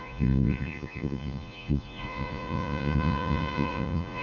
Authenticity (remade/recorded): remade